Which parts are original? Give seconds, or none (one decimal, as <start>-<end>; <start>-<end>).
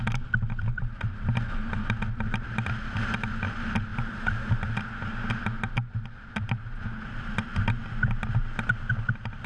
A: 0.0-9.5